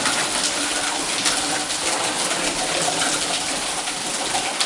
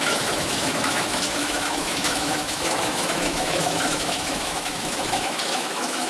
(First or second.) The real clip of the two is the first